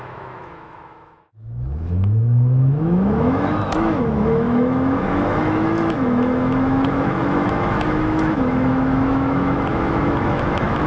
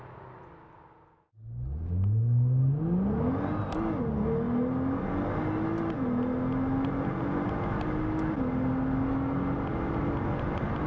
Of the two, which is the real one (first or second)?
second